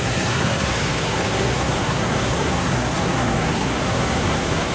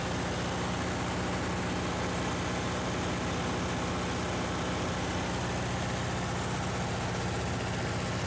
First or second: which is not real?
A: first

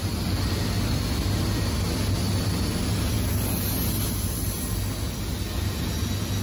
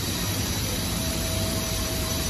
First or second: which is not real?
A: second